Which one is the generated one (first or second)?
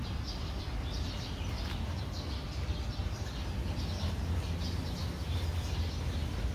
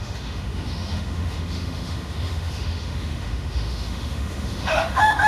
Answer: second